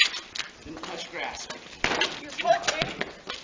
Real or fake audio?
fake